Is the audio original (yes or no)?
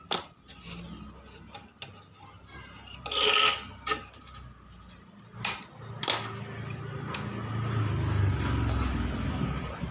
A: yes